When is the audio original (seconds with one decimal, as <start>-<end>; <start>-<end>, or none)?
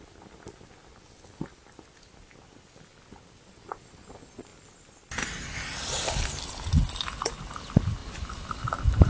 0.0-8.0